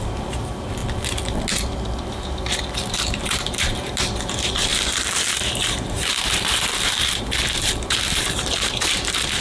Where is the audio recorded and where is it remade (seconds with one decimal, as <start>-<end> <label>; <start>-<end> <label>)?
0.0-0.8 remade; 0.8-2.9 recorded; 2.9-9.4 remade